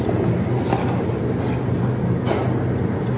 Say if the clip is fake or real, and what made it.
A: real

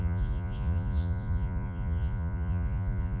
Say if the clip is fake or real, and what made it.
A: fake, vocoder, Vocos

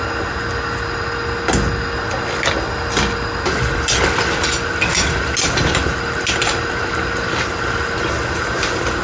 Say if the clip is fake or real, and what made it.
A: real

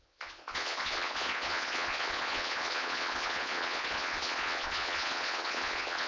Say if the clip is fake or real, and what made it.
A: fake, vocoder, Vocos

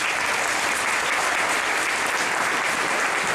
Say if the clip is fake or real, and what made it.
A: real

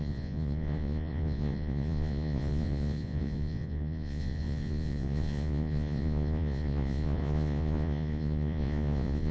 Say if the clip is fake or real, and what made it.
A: fake, vocoder, Vocos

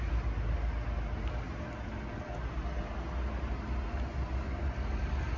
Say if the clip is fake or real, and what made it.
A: real